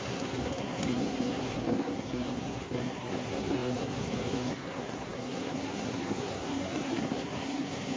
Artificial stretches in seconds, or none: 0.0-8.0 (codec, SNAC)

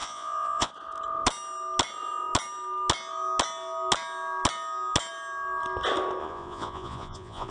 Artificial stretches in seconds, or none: 0.0-0.7 (vocoder, Vocos); 6.2-7.5

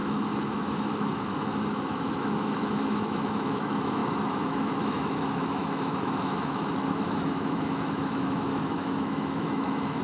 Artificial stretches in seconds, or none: 0.0-10.0 (autoencoder, DAC-VAE)